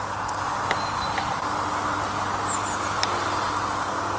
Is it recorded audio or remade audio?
recorded